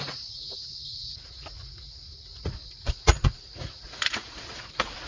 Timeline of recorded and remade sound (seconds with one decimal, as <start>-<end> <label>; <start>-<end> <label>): 0.0-5.1 remade